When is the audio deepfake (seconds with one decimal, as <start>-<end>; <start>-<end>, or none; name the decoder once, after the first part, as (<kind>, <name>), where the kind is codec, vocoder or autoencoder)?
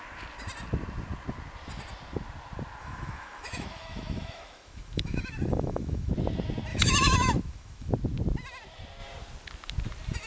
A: 2.8-6.1 (autoencoder, DAC-VAE); 6.7-7.9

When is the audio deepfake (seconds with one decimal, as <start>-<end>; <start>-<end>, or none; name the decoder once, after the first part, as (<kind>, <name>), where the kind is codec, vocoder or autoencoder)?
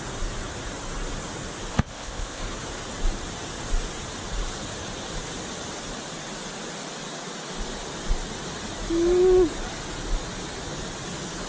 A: 1.7-2.4 (codec, ZipCodec)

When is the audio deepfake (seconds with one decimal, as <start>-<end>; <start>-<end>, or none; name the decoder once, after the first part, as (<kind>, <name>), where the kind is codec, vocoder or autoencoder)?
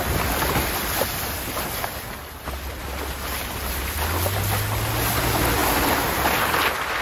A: none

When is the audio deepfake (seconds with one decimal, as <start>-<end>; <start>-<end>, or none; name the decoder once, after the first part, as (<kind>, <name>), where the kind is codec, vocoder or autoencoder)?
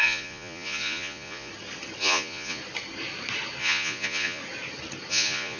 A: 0.0-1.5 (vocoder, Vocos); 2.0-2.6; 3.6-4.4; 5.1-5.6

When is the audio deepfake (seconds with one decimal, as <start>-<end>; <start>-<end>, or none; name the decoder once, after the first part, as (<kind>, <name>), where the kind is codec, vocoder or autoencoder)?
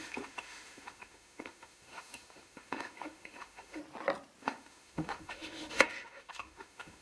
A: 0.0-3.8 (autoencoder, DAC-VAE); 4.4-7.0